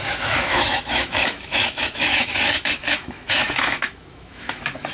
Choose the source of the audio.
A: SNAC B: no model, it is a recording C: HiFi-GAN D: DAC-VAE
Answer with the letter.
D